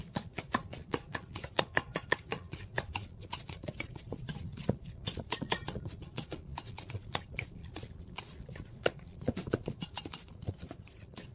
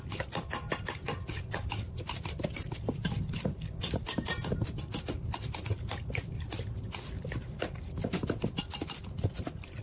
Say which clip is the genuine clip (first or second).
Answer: second